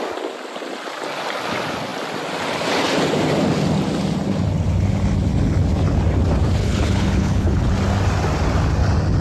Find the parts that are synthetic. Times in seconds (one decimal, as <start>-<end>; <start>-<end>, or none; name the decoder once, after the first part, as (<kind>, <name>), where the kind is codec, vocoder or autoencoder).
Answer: 6.6-7.7 (codec, HILCodec)